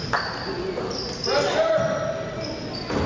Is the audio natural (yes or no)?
yes